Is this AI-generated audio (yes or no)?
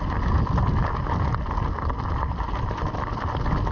no